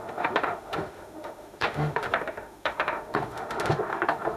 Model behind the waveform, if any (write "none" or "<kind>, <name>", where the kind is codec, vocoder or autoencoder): autoencoder, DAC-VAE